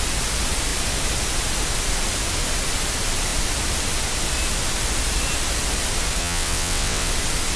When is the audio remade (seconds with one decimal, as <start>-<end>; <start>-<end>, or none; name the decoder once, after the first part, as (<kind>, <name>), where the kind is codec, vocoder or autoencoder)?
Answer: 6.2-7.1 (vocoder, WaveNeXt)